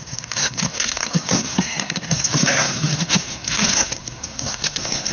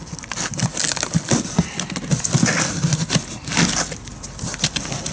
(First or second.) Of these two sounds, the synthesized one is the first